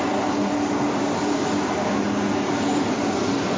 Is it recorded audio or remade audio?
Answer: recorded